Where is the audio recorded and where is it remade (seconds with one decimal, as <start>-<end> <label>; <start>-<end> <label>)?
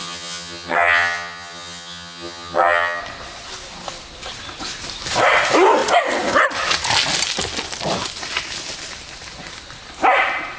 0.0-3.0 remade; 3.0-10.6 recorded